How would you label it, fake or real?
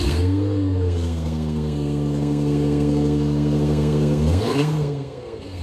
fake